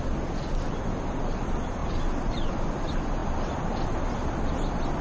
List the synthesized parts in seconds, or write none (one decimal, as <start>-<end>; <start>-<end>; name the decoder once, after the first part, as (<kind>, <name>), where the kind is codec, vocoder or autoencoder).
none

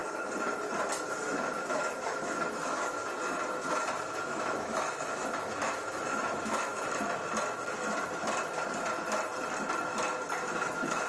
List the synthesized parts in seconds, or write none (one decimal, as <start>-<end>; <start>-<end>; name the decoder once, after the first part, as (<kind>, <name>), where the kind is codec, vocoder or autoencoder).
1.1-3.0 (autoencoder, DAC-VAE); 4.4-6.7; 10.6-11.1

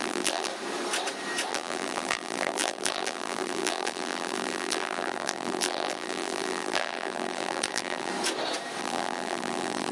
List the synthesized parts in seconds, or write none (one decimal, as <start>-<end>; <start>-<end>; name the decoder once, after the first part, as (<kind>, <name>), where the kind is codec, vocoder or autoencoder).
0.0-0.5 (vocoder, BigVGAN v2); 1.5-8.1; 8.8-9.9

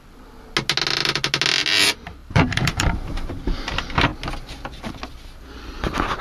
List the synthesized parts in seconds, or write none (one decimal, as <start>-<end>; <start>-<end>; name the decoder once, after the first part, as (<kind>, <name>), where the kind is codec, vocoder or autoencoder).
2.2-3.3 (vocoder, BigVGAN v2)

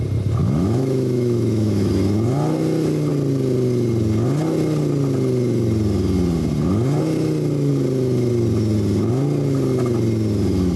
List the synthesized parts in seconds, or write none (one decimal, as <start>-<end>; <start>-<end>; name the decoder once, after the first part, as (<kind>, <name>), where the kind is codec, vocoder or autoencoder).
0.4-1.9 (autoencoder, DAC-VAE)

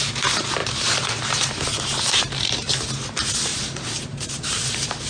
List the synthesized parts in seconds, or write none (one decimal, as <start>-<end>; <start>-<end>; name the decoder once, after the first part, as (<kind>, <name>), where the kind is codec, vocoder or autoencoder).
0.6-2.7 (vocoder, BigVGAN v2); 3.5-5.1